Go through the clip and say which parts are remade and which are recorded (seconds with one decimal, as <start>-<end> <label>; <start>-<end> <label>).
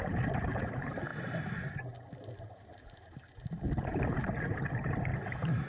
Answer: 0.0-1.1 remade; 1.1-2.4 recorded; 2.4-5.7 remade